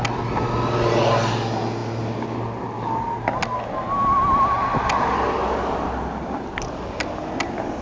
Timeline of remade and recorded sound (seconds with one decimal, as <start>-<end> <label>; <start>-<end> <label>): 0.0-7.8 recorded